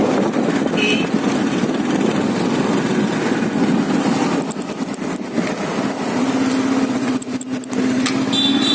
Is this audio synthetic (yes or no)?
no